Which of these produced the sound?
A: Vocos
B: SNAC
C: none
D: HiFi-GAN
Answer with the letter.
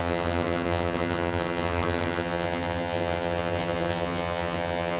D